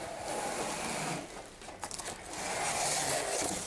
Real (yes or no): yes